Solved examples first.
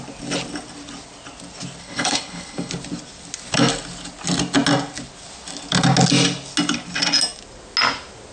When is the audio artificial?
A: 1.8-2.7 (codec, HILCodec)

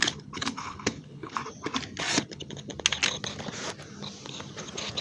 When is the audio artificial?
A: 0.0-1.4 (codec, HILCodec); 2.2-2.7

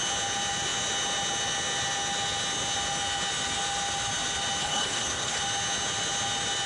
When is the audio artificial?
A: 4.6-5.4 (codec, HILCodec)